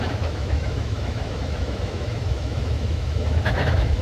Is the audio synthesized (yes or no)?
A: yes